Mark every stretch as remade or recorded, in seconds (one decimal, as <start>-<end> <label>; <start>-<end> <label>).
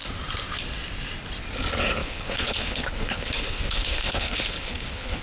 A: 0.0-2.0 recorded; 2.0-5.2 remade